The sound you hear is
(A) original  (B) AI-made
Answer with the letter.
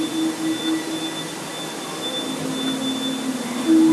A